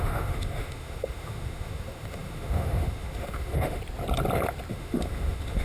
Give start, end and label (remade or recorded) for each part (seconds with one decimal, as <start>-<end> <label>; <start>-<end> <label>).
0.0-3.8 remade; 3.8-4.7 recorded; 4.7-5.6 remade

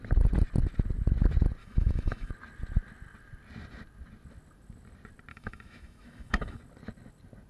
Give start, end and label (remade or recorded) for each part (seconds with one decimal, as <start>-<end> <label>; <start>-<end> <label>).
0.0-1.6 recorded; 1.6-2.3 remade; 2.3-5.3 recorded; 5.3-6.6 remade; 6.6-7.5 recorded

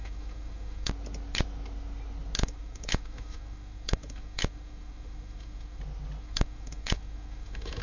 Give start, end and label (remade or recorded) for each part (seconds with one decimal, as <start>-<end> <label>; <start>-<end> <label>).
0.0-0.9 remade; 0.9-2.4 recorded; 2.4-5.8 remade; 5.8-6.2 recorded; 6.2-7.8 remade

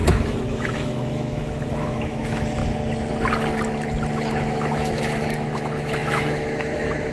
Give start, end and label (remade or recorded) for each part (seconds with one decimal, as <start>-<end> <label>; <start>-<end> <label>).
0.0-2.6 remade; 2.6-4.3 recorded; 4.3-7.1 remade

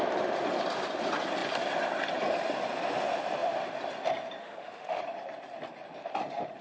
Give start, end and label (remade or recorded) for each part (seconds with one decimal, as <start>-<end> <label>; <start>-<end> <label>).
0.0-4.4 recorded; 4.4-5.0 remade; 5.0-6.6 recorded

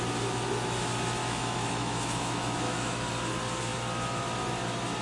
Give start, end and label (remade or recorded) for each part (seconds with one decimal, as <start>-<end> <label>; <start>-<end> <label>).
0.0-1.2 recorded; 1.2-3.1 remade; 3.1-5.0 recorded

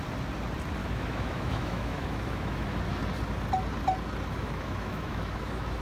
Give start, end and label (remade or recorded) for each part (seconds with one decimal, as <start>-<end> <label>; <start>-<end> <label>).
0.0-0.8 recorded; 0.8-2.8 remade; 2.8-4.3 recorded; 4.3-5.8 remade

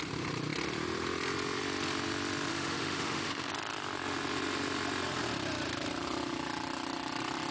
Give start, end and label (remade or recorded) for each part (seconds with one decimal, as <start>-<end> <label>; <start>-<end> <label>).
0.0-2.5 recorded; 2.5-3.5 remade; 3.5-7.5 recorded